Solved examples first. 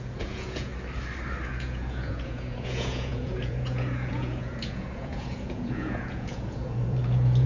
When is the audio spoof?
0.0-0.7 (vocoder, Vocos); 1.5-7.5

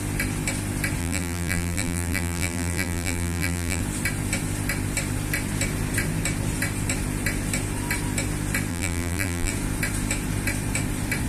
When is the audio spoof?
1.0-3.8 (vocoder, BigVGAN v2); 8.7-9.5

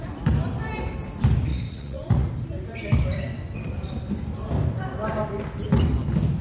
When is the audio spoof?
1.5-2.3 (vocoder, Vocos)

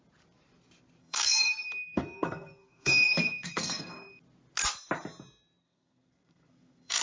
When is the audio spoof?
1.0-3.9 (codec, SNAC); 5.6-7.0

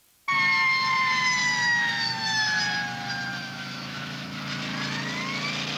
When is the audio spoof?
1.4-2.6 (autoencoder, DAC-VAE); 3.3-4.4